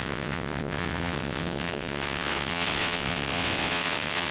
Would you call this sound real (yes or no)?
no